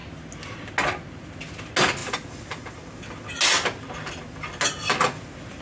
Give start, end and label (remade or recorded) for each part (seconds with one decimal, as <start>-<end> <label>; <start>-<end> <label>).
0.0-5.6 recorded